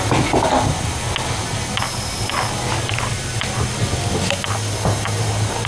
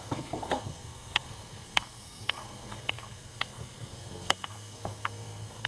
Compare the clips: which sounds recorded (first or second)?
first